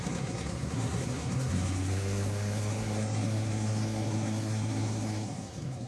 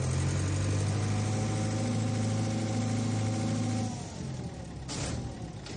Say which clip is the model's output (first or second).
first